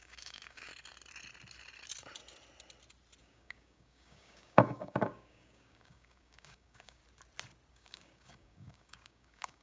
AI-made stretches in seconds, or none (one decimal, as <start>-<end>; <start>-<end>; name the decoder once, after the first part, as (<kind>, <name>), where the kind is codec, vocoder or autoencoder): 0.0-0.7 (codec, DAC); 3.2-7.0; 7.7-9.6

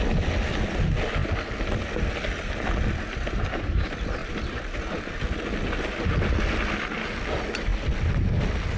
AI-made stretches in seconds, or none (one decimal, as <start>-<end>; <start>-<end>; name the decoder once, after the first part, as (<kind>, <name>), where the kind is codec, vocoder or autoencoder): none

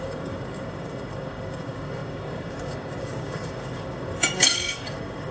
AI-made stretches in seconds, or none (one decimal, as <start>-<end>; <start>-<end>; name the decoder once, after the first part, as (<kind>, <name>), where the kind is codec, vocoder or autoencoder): 0.0-5.3 (codec, DAC)

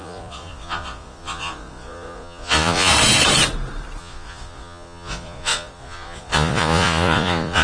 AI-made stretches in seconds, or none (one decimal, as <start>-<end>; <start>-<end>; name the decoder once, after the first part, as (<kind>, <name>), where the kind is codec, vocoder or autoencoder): 0.0-2.9 (vocoder, Vocos); 4.0-7.6

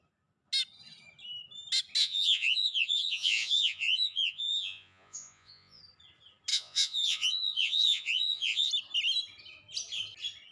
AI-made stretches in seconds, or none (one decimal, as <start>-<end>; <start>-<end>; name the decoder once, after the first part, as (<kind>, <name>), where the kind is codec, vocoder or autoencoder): 2.0-5.8 (vocoder, Vocos); 6.5-8.7

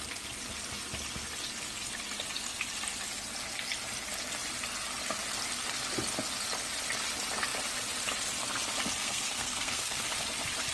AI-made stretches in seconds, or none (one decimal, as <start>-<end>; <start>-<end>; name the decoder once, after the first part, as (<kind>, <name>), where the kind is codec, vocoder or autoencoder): 9.0-10.0 (codec, SNAC)

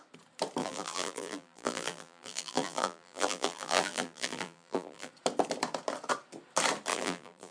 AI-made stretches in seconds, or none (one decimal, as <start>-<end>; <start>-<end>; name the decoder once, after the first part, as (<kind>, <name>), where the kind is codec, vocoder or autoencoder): 0.6-5.1 (vocoder, BigVGAN v2); 6.9-7.5